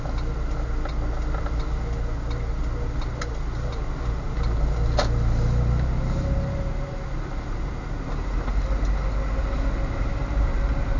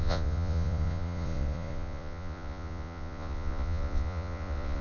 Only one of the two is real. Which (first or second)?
first